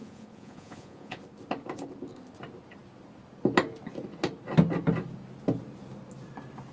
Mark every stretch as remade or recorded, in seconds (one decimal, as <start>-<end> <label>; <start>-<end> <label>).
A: 0.0-1.2 remade; 1.2-6.7 recorded